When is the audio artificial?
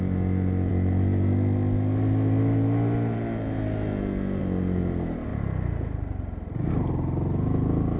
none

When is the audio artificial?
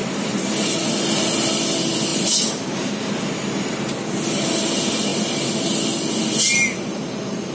0.0-0.5 (vocoder, BigVGAN v2); 2.1-2.7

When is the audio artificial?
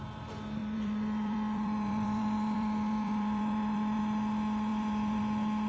0.6-4.0 (vocoder, BigVGAN v2); 4.7-5.2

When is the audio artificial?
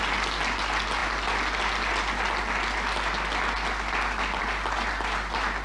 none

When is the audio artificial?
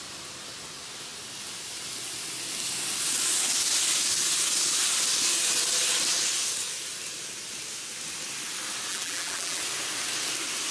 8.9-9.6 (vocoder, BigVGAN v2)